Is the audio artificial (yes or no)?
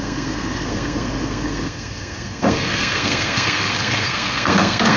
yes